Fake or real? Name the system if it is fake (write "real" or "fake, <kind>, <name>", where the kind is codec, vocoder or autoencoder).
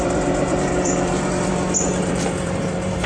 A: fake, vocoder, BigVGAN v2